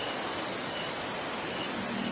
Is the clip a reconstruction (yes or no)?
no